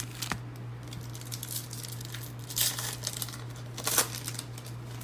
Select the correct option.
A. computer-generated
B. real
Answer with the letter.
B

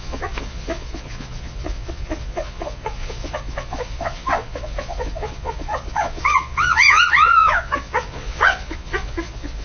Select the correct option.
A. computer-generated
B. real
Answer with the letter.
A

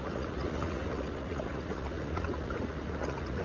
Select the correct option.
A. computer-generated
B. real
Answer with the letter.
A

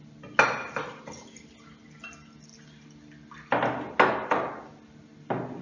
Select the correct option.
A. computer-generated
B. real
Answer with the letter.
B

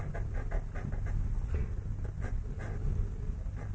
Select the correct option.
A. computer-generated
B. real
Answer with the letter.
B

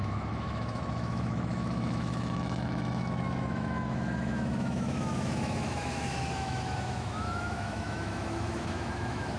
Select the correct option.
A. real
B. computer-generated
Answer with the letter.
B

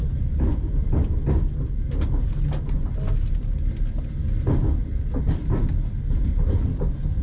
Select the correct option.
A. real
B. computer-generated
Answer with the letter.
A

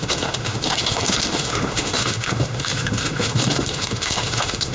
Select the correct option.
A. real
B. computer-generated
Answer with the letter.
B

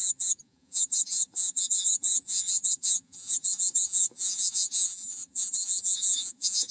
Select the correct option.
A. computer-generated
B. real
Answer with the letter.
A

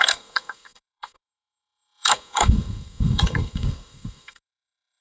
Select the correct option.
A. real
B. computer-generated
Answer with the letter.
B